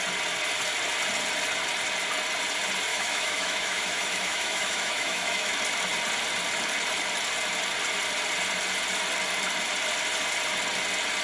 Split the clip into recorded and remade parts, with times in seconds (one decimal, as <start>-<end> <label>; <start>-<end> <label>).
0.0-2.9 recorded; 2.9-5.5 remade; 5.5-11.2 recorded